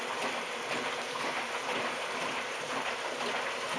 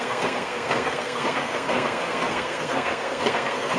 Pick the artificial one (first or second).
second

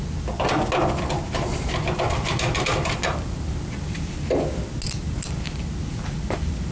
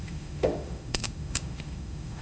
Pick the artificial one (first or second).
second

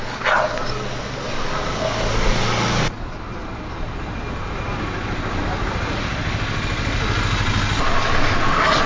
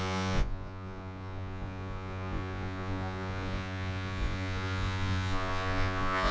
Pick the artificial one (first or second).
second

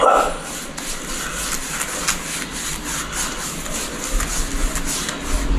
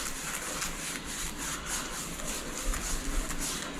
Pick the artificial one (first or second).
second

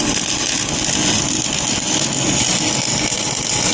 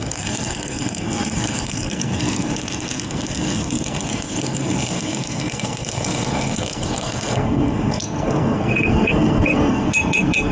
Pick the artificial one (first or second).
second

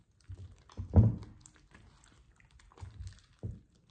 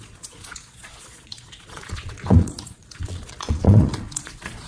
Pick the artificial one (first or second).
second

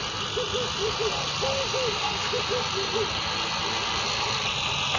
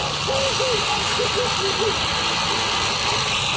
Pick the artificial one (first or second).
second